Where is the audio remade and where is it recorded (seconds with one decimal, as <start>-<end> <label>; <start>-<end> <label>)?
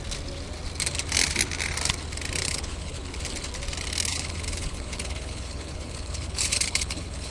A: 0.0-2.4 recorded; 2.4-3.2 remade; 3.2-4.1 recorded; 4.1-7.3 remade